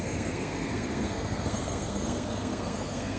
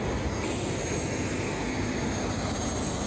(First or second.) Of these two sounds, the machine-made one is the first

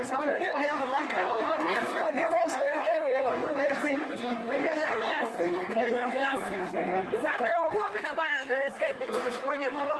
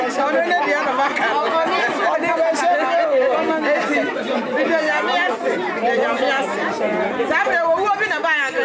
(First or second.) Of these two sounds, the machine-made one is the first